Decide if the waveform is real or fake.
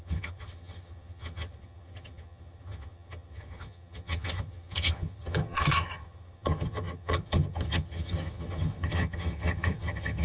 fake